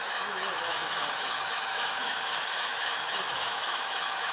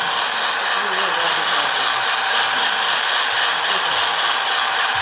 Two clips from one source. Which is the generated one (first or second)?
first